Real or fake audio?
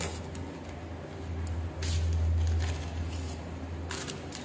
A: real